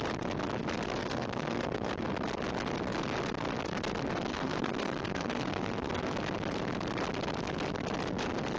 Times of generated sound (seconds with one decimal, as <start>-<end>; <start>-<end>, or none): 1.0-1.9; 4.3-6.0